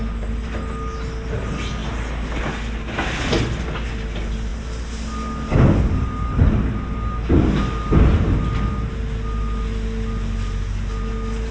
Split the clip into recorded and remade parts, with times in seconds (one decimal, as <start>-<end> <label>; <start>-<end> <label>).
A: 0.0-11.5 recorded